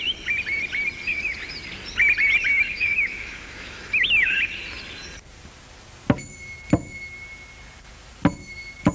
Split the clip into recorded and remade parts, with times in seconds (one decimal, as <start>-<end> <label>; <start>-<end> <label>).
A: 0.0-2.5 recorded; 2.5-4.5 remade; 4.5-8.9 recorded